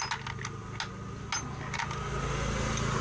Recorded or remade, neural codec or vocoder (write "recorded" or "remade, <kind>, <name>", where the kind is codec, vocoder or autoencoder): recorded